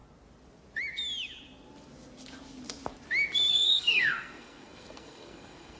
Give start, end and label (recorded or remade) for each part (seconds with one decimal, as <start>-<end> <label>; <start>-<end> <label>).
0.0-3.5 recorded; 3.5-5.8 remade